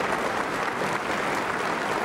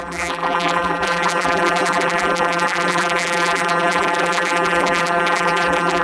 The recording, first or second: first